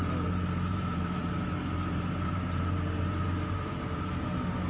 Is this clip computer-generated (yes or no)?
yes